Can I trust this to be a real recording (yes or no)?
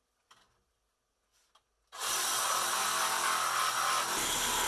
yes